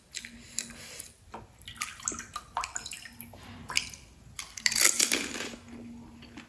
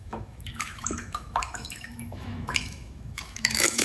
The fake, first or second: second